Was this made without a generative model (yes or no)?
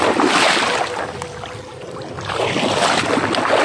yes